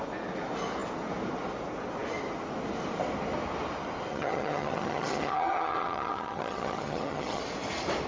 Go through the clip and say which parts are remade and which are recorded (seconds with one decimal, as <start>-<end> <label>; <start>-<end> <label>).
0.0-4.1 recorded; 4.1-7.4 remade; 7.4-8.1 recorded